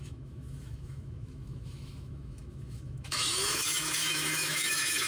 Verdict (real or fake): fake